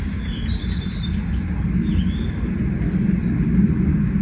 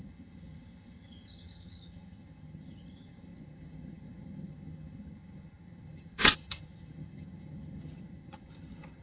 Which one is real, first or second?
first